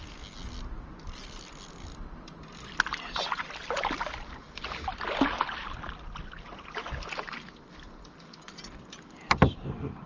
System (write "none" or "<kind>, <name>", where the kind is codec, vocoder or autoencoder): none